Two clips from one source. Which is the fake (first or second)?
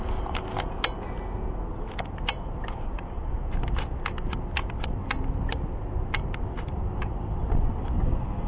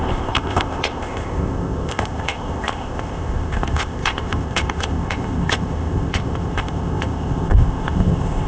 second